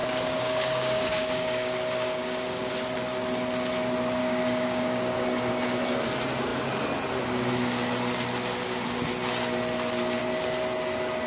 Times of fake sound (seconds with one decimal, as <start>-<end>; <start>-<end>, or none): 0.0-2.7; 4.2-5.5